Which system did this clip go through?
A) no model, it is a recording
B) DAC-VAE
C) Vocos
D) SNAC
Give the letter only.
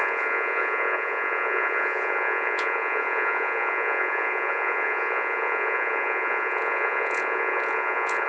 C